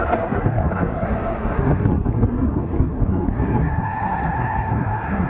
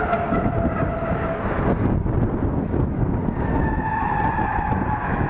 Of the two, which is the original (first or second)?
second